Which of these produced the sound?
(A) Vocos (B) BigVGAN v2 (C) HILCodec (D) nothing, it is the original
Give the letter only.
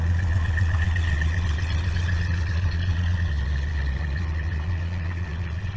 A